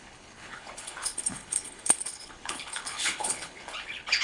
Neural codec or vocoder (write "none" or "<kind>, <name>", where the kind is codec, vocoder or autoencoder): codec, HILCodec